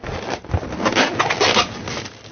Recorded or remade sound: recorded